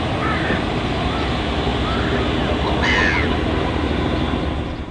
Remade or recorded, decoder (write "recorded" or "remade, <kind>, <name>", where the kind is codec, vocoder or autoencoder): recorded